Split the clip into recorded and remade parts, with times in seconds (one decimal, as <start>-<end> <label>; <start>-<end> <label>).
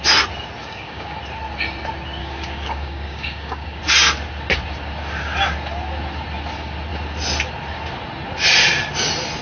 0.0-0.6 recorded; 0.6-1.2 remade; 1.2-2.2 recorded; 2.2-3.8 remade; 3.8-9.4 recorded